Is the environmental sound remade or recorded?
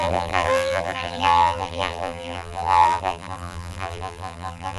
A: remade